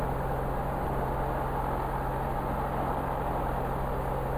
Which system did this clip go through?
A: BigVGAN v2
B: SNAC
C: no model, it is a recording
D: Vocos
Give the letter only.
C